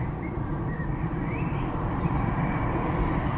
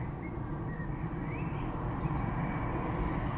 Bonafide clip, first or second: second